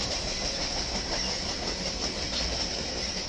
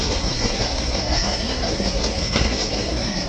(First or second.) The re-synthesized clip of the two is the second